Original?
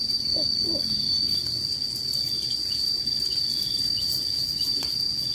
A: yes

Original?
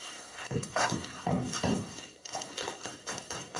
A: no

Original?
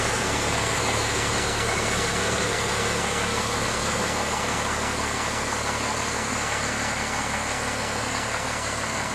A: no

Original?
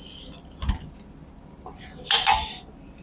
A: yes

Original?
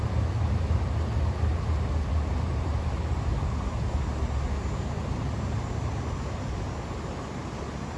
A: yes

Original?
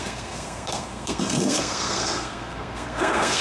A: no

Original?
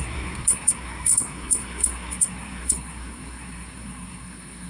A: no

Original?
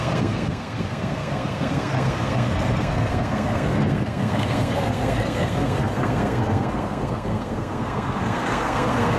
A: no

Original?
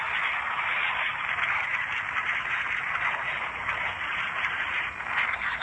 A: yes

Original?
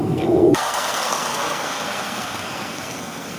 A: no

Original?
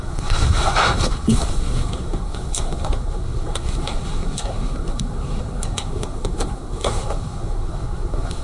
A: no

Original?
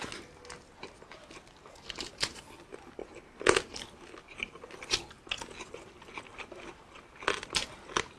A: yes